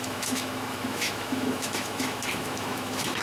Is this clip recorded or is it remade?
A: remade